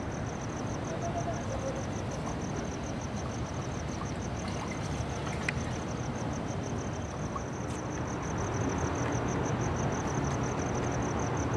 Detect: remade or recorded recorded